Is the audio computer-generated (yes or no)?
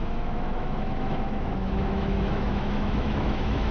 yes